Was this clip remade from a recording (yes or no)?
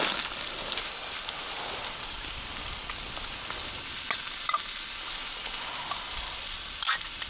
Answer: no